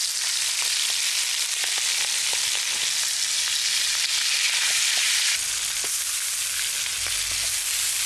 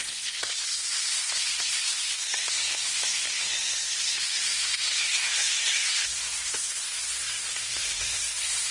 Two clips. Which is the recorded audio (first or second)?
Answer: first